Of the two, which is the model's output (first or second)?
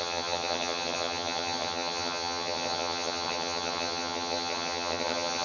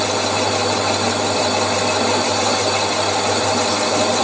first